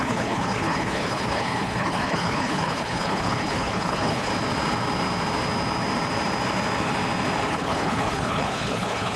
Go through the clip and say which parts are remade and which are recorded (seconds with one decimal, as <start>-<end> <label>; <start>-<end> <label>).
0.0-4.3 remade; 4.3-7.5 recorded; 7.5-9.2 remade